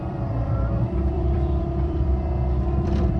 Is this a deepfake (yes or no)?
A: yes